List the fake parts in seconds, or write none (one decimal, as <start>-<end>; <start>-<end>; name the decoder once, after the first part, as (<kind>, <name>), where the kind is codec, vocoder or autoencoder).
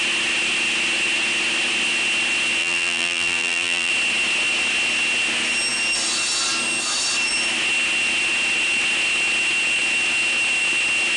2.6-3.9 (vocoder, BigVGAN v2)